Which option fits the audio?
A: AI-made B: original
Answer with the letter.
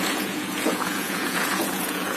A